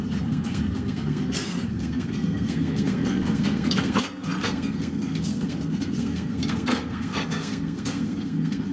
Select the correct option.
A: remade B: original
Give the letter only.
A